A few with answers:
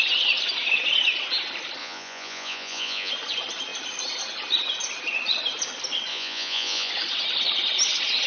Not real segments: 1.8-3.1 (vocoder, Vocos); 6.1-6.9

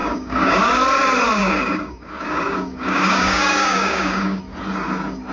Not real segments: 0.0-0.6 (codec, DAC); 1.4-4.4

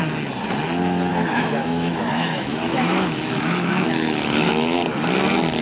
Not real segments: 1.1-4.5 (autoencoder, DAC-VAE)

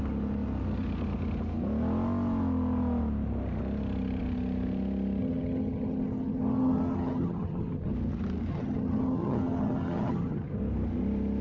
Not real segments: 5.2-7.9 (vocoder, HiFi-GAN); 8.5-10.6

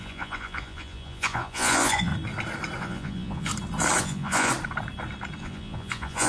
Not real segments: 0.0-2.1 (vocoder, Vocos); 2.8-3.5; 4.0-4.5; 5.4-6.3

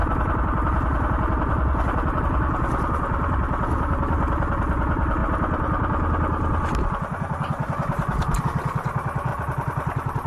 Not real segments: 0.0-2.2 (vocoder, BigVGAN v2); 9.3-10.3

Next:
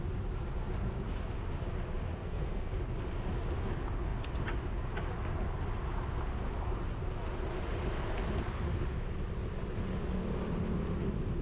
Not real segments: 2.1-2.7 (codec, SNAC)